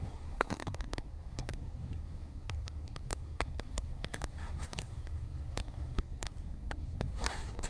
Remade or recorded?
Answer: remade